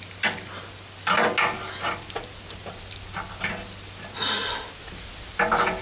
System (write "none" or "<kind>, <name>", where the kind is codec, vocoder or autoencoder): none